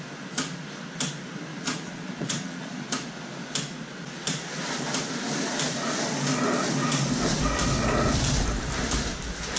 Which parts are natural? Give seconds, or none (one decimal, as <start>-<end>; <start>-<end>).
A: 0.0-1.5; 2.9-9.6